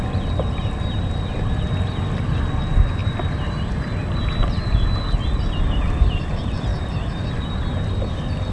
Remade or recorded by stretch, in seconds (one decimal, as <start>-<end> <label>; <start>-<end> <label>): 0.0-6.7 recorded; 6.7-7.2 remade; 7.2-8.5 recorded